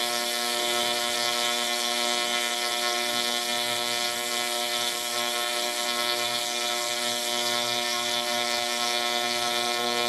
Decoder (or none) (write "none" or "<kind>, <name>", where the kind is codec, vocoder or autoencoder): codec, SNAC